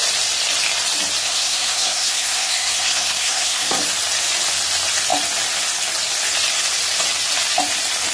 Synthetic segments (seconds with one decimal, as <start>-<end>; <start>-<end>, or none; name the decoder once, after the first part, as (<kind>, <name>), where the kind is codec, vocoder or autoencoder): 1.2-3.8 (codec, SNAC)